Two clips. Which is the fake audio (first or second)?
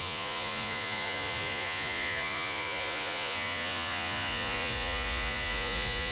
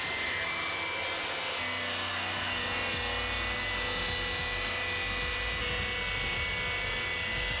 first